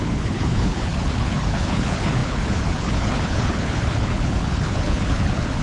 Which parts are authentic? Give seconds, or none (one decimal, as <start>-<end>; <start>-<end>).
none